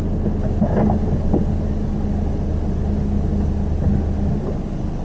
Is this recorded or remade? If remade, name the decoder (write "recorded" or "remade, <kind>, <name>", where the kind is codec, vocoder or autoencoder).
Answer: recorded